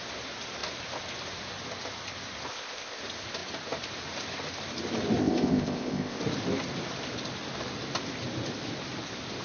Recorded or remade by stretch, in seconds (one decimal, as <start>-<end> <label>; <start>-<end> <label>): 0.0-2.5 recorded; 2.5-3.0 remade; 3.0-5.2 recorded; 5.2-6.2 remade; 6.2-9.4 recorded